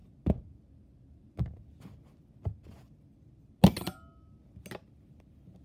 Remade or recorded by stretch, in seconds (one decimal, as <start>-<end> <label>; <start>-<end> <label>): 0.0-5.6 recorded